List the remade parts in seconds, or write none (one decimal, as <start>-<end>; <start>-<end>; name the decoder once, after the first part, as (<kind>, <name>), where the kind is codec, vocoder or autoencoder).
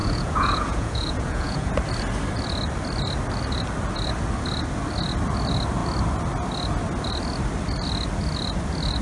0.0-1.7 (vocoder, Vocos)